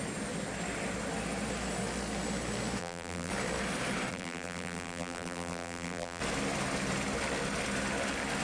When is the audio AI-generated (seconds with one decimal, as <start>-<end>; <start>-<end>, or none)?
2.8-3.3; 4.1-6.2